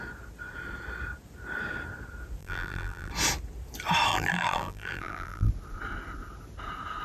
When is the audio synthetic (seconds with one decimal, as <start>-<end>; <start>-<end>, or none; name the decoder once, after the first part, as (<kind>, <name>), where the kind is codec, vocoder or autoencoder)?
2.4-3.1 (vocoder, BigVGAN v2); 4.1-5.5